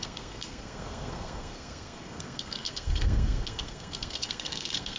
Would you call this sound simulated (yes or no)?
yes